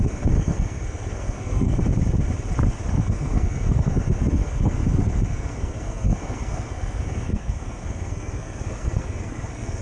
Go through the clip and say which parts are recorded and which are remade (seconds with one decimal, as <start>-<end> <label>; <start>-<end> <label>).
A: 0.0-1.8 remade; 1.8-2.9 recorded; 2.9-9.8 remade